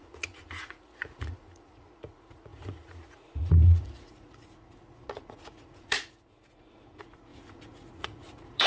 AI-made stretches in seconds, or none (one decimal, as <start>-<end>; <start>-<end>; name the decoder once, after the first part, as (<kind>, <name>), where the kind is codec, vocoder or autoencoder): 0.0-8.7 (vocoder, Vocos)